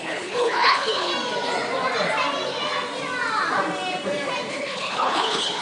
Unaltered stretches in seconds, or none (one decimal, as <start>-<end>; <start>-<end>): 1.1-4.5